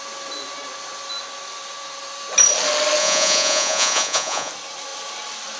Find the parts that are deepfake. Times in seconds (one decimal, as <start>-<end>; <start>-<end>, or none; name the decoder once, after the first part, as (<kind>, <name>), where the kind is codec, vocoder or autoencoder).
3.0-4.5 (vocoder, Vocos)